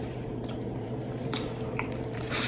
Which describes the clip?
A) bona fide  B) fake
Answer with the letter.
B